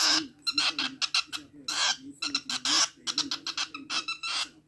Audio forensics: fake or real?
real